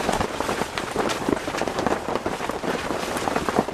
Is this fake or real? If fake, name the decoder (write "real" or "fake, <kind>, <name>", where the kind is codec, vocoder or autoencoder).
fake, vocoder, BigVGAN v2